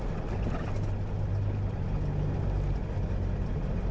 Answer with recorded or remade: recorded